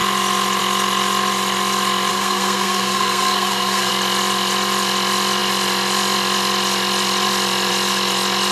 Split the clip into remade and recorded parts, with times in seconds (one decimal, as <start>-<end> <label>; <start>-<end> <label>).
0.0-2.1 recorded; 2.1-3.9 remade; 3.9-8.5 recorded